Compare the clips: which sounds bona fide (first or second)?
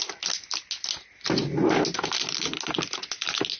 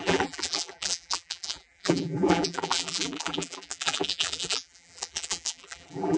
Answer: first